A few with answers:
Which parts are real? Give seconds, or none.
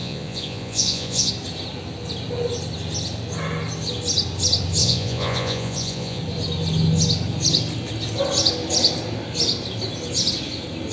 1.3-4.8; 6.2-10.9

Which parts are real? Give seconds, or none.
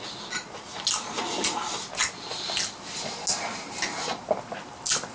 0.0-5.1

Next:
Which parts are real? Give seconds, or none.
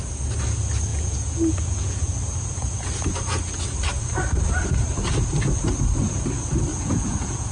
0.0-0.9; 2.1-6.7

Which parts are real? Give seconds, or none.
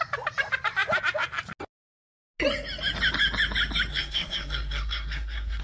0.0-3.9